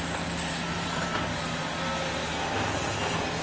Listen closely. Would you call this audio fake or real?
real